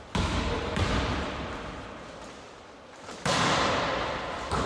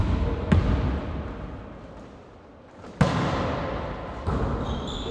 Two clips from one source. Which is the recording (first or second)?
second